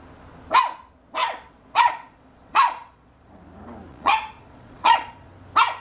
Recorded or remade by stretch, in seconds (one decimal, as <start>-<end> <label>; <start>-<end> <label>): 0.0-1.2 recorded; 1.2-3.4 remade; 3.4-3.9 recorded; 3.9-5.3 remade; 5.3-5.8 recorded

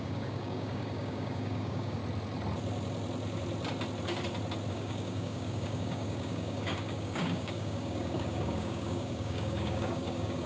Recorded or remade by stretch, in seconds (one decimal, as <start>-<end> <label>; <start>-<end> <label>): 0.0-2.0 remade; 2.0-4.7 recorded; 4.7-10.5 remade

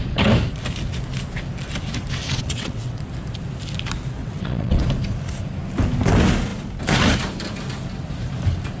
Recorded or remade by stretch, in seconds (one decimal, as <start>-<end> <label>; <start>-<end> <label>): 0.0-2.2 recorded; 2.2-3.0 remade; 3.0-4.2 recorded; 4.2-4.8 remade; 4.8-8.8 recorded

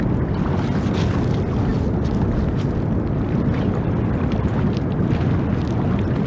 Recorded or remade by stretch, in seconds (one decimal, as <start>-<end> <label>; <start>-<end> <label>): 0.0-6.3 recorded